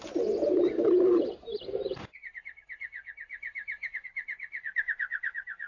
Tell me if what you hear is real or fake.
fake